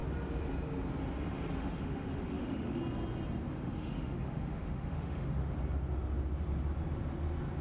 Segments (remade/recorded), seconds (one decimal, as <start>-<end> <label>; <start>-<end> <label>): 0.0-1.5 recorded; 1.5-2.8 remade; 2.8-3.5 recorded; 3.5-5.4 remade; 5.4-7.6 recorded